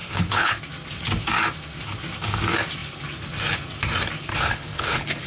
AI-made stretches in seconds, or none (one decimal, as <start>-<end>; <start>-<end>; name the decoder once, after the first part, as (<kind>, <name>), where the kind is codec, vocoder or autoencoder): 0.0-0.6 (codec, HILCodec); 4.3-5.3